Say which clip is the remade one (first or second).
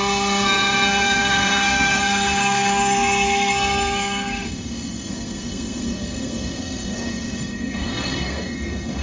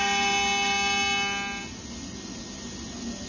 first